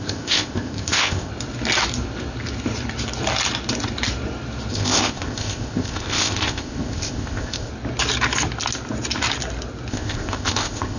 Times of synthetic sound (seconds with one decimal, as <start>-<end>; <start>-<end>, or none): 0.0-1.3; 4.7-7.7; 9.9-11.0